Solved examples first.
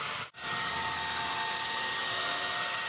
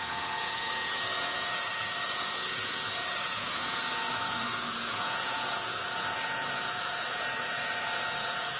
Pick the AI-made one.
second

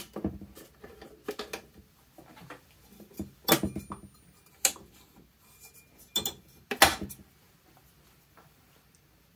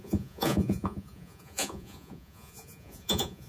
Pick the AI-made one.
second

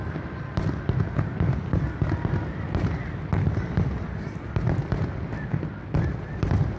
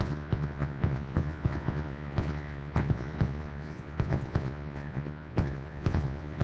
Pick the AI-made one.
second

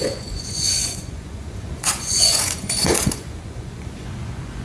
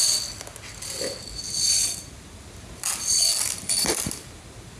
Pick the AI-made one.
first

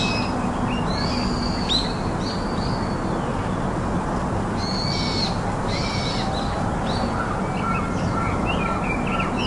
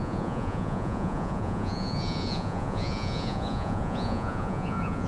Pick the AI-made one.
second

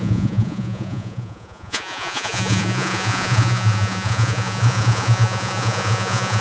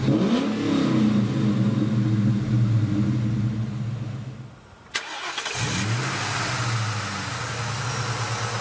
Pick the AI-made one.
first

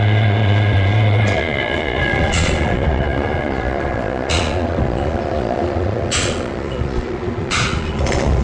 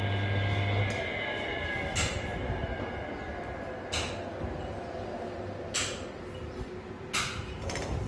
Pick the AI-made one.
first